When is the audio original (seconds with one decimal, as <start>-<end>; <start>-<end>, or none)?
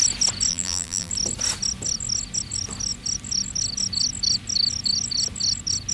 0.0-0.5; 1.1-5.9